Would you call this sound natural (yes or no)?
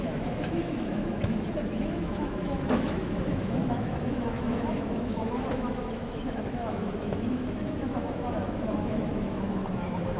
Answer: no